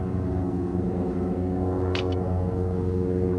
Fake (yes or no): yes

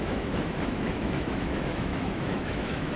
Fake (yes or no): yes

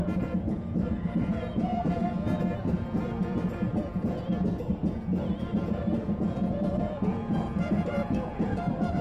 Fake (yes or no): yes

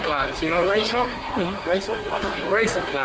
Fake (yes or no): yes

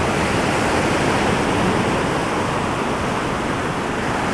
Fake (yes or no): no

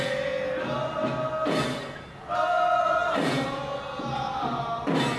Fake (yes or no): no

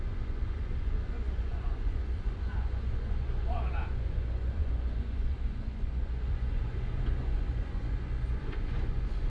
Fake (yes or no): yes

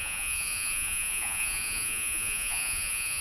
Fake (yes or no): yes